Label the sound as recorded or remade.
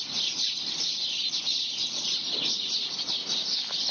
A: recorded